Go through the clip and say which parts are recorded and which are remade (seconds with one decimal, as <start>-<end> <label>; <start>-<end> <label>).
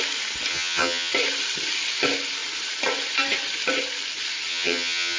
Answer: 0.0-0.5 recorded; 0.5-1.1 remade; 1.1-4.5 recorded; 4.5-5.2 remade